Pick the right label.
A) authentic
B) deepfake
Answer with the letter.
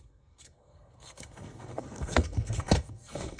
B